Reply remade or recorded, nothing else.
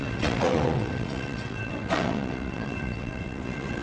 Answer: remade